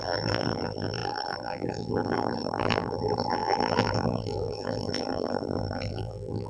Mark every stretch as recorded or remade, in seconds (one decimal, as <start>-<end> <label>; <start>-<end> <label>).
0.0-6.5 remade